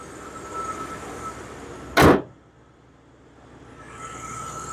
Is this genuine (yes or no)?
yes